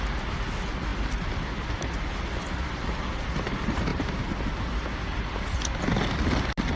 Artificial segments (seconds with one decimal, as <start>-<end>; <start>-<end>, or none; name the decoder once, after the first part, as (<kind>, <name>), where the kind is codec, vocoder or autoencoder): none